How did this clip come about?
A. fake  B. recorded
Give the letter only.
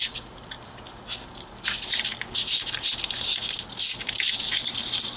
B